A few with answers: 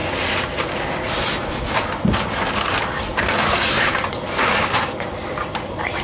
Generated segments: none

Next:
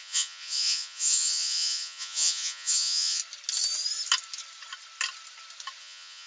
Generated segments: 0.0-3.2 (vocoder, Vocos); 5.8-6.3

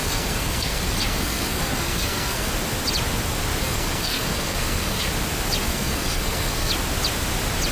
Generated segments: 0.0-2.5 (codec, SNAC); 3.6-5.1; 5.6-6.7

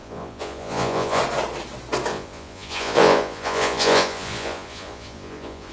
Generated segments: 0.0-1.2 (vocoder, Vocos); 2.1-5.7

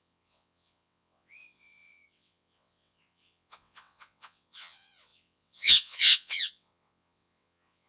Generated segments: 0.0-7.9 (vocoder, WaveNeXt)

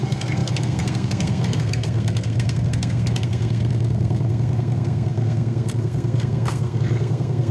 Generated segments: 0.0-7.5 (codec, SNAC)

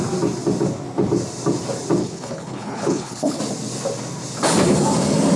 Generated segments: 2.0-3.4 (codec, HILCodec)

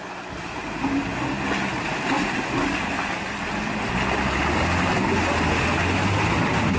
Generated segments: none